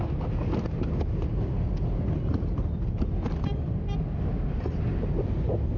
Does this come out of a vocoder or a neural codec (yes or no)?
no